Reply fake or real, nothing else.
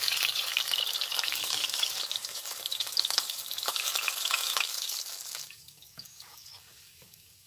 fake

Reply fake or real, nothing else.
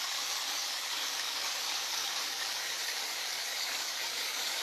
fake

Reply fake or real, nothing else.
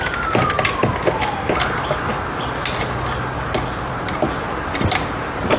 real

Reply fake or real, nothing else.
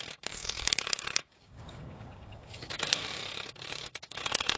fake